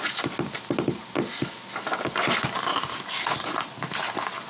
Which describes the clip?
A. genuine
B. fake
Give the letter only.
A